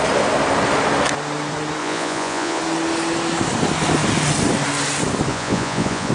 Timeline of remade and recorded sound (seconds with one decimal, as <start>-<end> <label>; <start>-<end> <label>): 0.0-1.8 recorded; 1.8-2.6 remade; 2.6-5.3 recorded; 5.3-6.1 remade